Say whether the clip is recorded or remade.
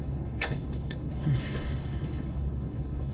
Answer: remade